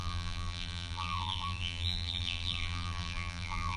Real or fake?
fake